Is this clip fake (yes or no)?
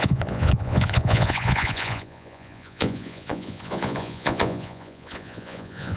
yes